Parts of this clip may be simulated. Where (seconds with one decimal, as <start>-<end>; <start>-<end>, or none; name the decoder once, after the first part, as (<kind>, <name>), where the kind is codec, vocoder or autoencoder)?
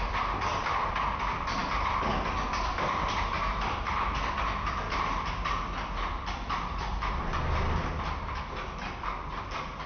none